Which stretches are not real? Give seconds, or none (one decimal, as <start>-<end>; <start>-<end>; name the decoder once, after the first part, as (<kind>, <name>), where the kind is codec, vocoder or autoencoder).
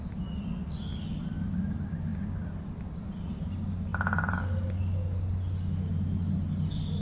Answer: none